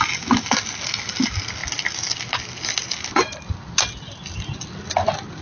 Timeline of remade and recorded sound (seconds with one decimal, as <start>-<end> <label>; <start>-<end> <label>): 0.0-5.4 recorded